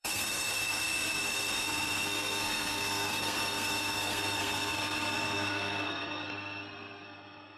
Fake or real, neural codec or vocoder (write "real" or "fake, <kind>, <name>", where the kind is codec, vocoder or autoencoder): fake, codec, SNAC